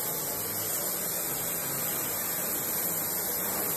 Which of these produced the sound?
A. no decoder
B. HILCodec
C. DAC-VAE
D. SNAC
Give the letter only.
A